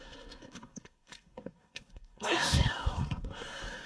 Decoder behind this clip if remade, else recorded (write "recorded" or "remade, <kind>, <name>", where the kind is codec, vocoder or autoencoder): remade, codec, SNAC